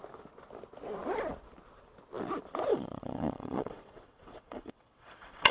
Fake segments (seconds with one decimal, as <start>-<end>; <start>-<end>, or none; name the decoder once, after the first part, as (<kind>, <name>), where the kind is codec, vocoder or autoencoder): 2.7-5.5 (vocoder, WaveNeXt)